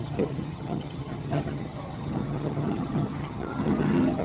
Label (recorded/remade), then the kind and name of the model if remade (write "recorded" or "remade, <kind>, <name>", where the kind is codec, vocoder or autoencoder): remade, vocoder, HiFi-GAN